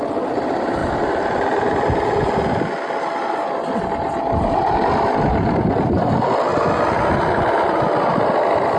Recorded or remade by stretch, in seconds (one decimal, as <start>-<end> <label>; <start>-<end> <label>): 0.0-8.8 recorded